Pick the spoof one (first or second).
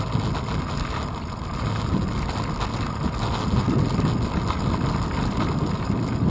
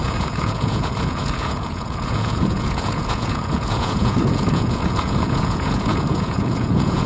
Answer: second